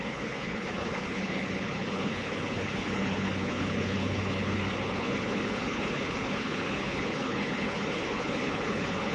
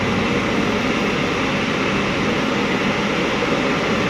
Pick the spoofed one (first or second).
first